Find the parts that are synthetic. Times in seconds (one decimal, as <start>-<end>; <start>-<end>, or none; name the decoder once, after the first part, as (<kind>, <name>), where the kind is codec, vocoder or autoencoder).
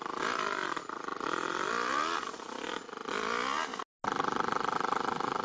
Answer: none